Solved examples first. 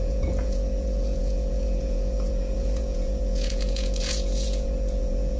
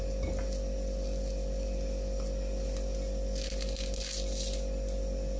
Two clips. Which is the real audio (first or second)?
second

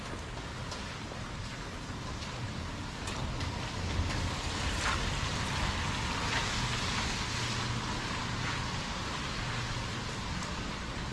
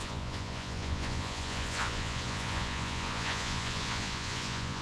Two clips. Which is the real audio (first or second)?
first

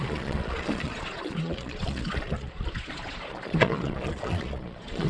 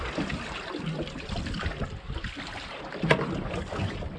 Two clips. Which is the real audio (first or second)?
second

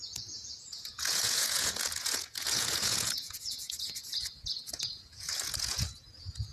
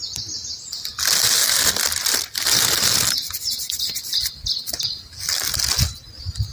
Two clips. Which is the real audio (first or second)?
second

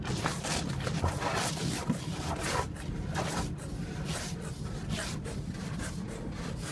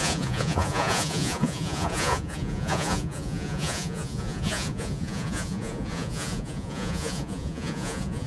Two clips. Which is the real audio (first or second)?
first